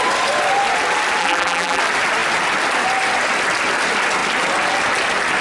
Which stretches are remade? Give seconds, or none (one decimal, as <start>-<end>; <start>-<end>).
1.2-1.8